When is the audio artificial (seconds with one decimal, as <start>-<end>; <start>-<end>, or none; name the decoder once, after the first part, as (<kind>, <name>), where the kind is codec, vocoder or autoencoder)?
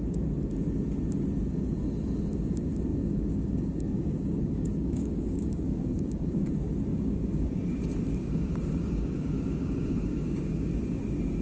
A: 2.9-6.5 (codec, DAC); 6.9-7.8; 8.2-10.7